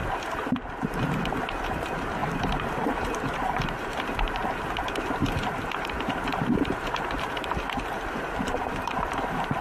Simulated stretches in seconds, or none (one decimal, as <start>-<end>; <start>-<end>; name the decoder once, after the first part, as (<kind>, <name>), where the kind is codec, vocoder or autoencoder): 1.7-4.4 (vocoder, BigVGAN v2); 5.2-9.6